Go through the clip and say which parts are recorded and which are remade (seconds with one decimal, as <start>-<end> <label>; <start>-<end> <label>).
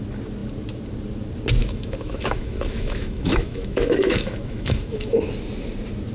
0.0-1.6 recorded; 1.6-5.3 remade; 5.3-6.1 recorded